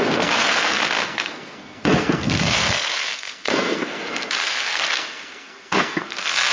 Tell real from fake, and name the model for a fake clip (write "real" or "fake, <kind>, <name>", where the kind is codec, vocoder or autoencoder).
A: fake, codec, SNAC